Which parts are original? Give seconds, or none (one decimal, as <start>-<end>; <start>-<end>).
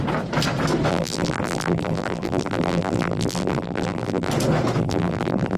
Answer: 0.0-0.9; 4.3-4.8